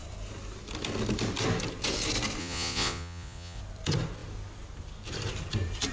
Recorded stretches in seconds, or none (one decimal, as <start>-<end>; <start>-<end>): 0.0-2.4; 3.6-5.9